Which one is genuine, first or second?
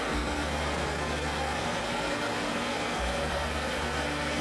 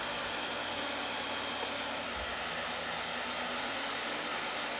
second